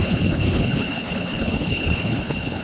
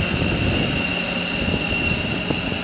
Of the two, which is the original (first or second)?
second